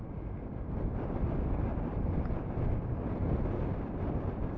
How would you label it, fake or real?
real